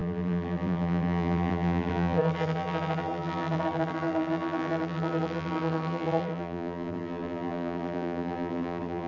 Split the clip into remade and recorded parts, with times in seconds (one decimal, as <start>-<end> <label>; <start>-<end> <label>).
0.0-9.1 remade